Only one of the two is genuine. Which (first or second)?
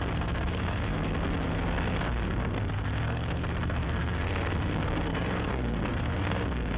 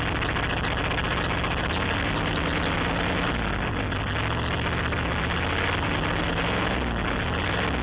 second